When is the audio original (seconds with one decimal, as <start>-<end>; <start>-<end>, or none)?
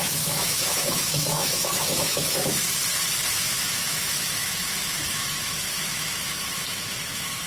2.6-3.3